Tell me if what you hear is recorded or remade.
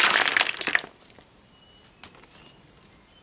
recorded